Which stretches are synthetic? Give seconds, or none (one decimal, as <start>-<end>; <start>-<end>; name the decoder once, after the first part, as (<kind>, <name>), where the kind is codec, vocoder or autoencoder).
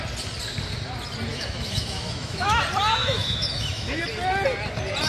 1.3-2.6 (autoencoder, DAC-VAE); 3.0-4.0